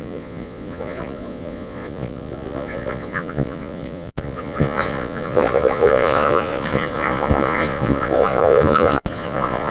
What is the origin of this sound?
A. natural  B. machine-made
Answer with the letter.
B